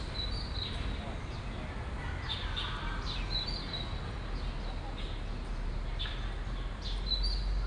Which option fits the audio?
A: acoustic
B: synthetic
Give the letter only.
A